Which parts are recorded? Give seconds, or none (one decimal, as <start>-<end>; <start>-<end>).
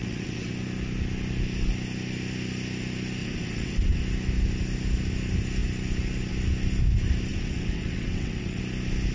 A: 0.5-3.2; 4.0-7.3; 8.6-9.1